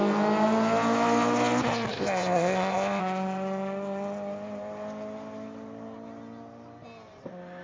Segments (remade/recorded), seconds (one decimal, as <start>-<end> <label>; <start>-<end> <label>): 0.0-1.9 recorded; 1.9-3.0 remade; 3.0-7.6 recorded